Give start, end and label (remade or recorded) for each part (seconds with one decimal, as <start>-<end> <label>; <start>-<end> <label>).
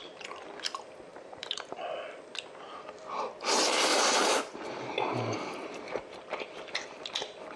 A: 0.0-1.1 recorded; 1.1-1.8 remade; 1.8-3.9 recorded; 3.9-7.0 remade; 7.0-7.6 recorded